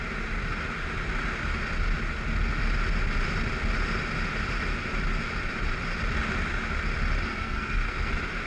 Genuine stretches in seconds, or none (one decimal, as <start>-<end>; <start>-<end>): 0.0-7.3; 8.1-8.5